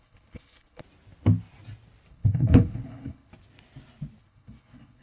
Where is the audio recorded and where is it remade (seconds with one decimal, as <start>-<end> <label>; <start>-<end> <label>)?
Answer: 0.0-0.8 remade; 0.8-2.1 recorded; 2.1-3.3 remade; 3.3-4.2 recorded; 4.2-5.0 remade